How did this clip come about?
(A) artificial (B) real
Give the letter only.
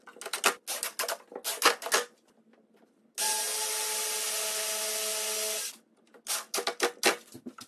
B